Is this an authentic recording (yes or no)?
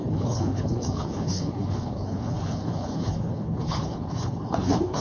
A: no